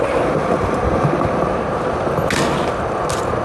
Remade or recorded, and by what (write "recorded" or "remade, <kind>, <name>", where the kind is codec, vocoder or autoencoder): recorded